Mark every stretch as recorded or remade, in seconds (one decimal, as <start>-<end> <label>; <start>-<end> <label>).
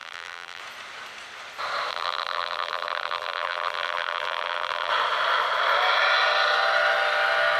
0.0-0.6 remade; 0.6-1.9 recorded; 1.9-4.9 remade; 4.9-7.6 recorded